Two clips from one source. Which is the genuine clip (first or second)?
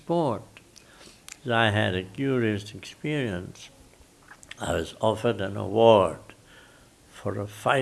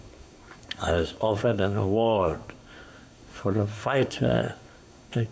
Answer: first